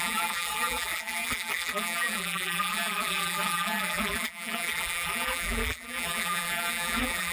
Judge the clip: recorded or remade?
remade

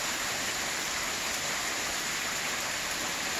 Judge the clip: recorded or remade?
remade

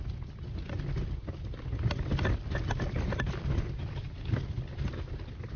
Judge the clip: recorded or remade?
recorded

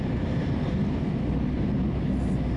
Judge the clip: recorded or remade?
recorded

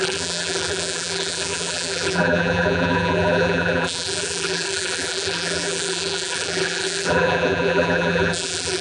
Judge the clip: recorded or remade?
remade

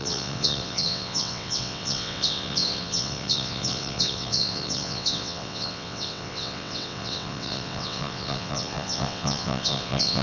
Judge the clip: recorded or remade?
remade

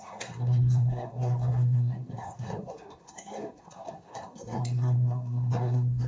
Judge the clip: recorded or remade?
remade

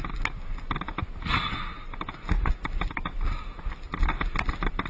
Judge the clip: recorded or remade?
recorded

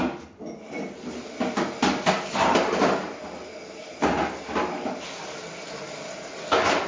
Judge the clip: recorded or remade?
recorded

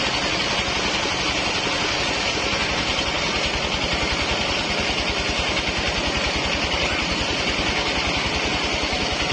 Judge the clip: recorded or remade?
recorded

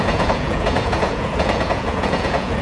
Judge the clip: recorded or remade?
remade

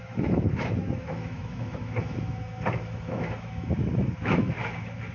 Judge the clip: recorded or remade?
remade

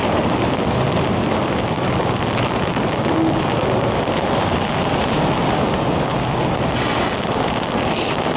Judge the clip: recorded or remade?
recorded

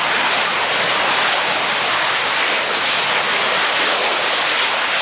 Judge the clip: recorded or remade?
recorded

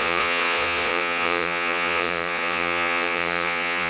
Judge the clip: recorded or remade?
remade